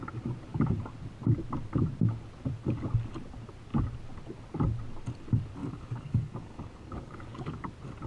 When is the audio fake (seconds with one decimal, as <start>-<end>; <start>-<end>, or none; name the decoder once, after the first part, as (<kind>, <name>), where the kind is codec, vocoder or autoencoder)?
5.6-7.6 (codec, DAC)